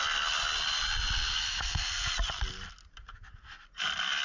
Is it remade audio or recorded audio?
recorded